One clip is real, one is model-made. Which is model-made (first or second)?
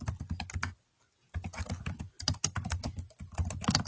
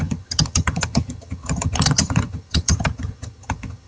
second